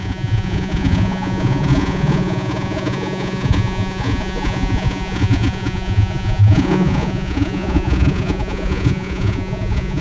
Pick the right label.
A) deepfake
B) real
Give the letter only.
A